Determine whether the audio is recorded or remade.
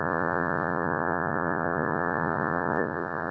remade